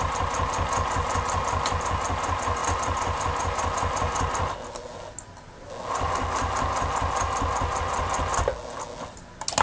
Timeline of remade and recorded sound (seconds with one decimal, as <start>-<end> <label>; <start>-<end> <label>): 0.0-9.6 recorded